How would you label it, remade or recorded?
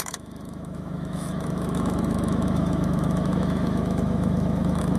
remade